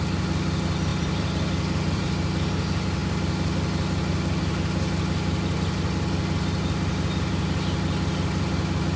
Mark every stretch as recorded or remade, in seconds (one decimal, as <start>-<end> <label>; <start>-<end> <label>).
0.0-0.9 recorded; 0.9-2.1 remade; 2.1-9.0 recorded